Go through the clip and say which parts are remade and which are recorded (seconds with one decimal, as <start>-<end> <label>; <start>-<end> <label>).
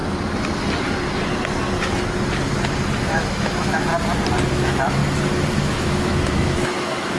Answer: 0.0-3.0 recorded; 3.0-3.9 remade; 3.9-4.5 recorded; 4.5-5.0 remade; 5.0-5.5 recorded; 5.5-7.2 remade